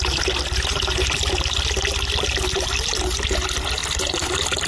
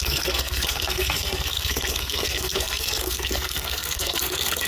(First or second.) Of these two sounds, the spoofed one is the second